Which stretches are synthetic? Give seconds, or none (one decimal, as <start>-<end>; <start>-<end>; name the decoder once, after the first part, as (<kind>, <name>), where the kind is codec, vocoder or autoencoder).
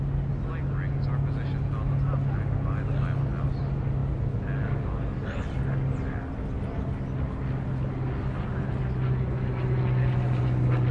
none